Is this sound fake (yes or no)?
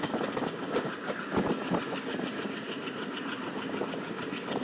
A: no